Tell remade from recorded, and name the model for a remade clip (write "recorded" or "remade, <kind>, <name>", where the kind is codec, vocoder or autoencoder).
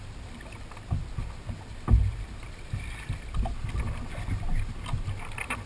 recorded